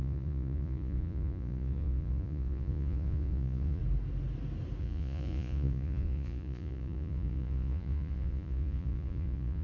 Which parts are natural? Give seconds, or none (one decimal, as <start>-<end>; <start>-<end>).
3.8-4.8